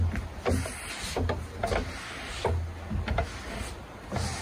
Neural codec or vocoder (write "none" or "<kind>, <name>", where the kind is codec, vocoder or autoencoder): none